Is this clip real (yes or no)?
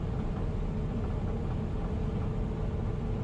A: yes